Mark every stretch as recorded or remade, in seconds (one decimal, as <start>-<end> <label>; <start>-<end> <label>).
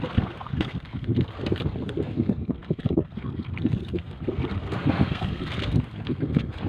0.0-6.7 remade